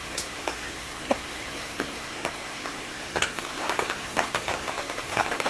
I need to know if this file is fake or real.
fake